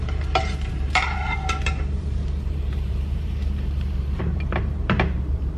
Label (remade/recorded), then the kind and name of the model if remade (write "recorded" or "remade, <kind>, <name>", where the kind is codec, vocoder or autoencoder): remade, vocoder, BigVGAN v2